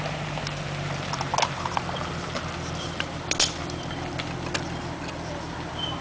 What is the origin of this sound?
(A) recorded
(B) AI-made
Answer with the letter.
A